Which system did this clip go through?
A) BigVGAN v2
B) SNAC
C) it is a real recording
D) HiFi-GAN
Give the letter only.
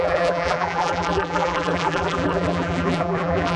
A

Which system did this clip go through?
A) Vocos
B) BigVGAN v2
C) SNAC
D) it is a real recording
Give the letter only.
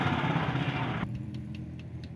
B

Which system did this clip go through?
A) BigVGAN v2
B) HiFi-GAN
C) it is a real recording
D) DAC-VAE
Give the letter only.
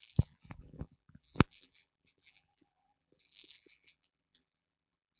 A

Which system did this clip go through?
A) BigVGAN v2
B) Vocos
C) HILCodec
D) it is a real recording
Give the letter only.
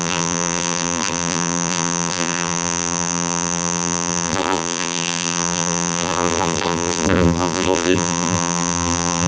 A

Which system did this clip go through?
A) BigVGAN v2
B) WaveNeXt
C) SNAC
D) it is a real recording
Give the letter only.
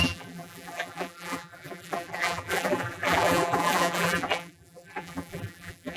A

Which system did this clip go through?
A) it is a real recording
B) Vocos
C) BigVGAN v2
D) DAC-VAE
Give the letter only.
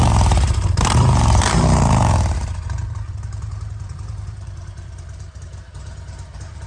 C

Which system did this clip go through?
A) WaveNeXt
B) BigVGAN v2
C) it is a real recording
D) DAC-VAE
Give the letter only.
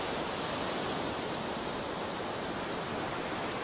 C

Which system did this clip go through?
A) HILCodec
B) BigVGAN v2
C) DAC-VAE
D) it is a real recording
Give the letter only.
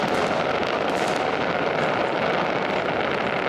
D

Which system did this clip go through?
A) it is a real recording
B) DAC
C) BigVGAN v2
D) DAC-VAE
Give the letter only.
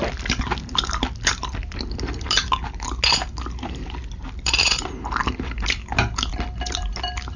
A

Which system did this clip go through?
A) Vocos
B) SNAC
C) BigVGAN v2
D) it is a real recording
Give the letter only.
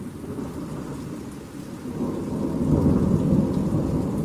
D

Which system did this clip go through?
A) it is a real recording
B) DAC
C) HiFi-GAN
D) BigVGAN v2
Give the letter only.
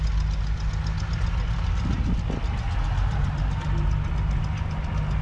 A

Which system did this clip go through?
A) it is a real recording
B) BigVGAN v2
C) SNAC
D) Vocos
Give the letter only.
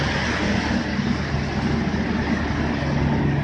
A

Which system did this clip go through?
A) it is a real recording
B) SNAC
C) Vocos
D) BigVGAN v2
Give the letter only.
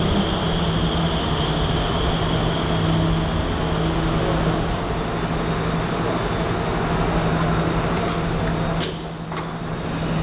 A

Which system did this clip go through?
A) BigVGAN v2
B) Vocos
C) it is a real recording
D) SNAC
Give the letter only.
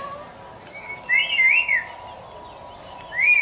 C